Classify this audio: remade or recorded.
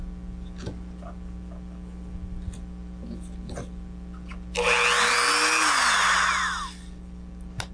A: recorded